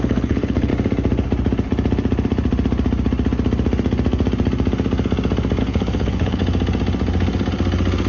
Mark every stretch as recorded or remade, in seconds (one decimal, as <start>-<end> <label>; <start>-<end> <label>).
0.0-0.7 remade; 0.7-5.6 recorded; 5.6-6.4 remade; 6.4-8.1 recorded